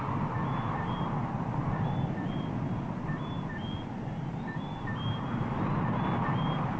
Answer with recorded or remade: recorded